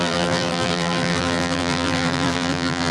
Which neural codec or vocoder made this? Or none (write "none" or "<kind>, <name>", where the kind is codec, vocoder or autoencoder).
vocoder, BigVGAN v2